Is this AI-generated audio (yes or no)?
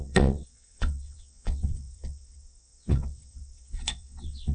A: yes